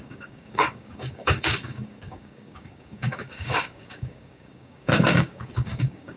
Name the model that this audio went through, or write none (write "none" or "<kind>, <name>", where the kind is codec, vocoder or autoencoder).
codec, DAC